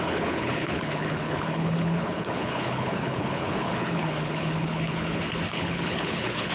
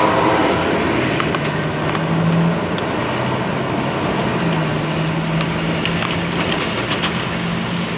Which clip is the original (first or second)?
second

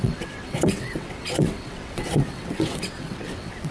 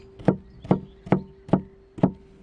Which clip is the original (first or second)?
second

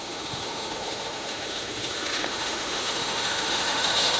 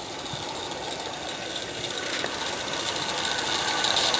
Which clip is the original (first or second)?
second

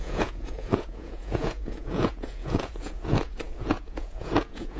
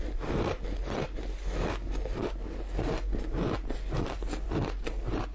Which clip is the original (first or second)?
second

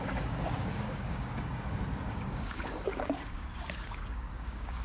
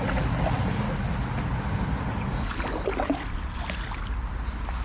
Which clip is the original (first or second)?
second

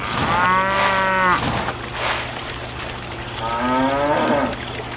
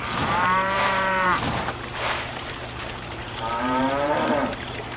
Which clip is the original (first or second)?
first